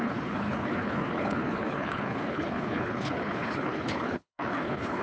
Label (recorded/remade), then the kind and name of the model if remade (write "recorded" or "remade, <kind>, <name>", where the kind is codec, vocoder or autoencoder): remade, codec, HILCodec